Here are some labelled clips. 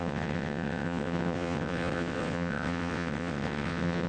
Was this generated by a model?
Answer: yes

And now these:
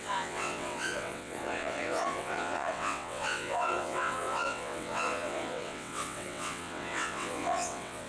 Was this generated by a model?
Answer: yes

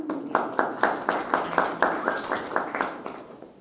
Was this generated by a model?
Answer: no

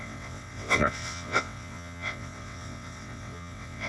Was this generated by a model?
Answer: yes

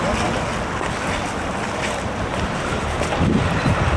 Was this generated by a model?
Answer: no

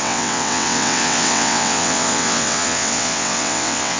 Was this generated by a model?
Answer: yes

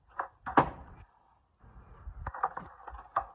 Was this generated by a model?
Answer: no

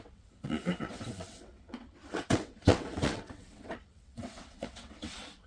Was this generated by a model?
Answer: yes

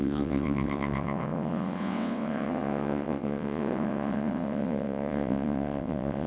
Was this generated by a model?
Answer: yes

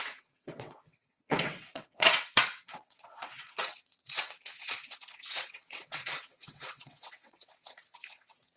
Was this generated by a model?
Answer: yes